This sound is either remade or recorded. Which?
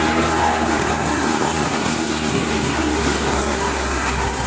remade